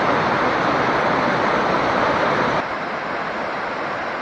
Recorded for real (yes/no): yes